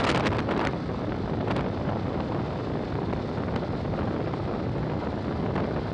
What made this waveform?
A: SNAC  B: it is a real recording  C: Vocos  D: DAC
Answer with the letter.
B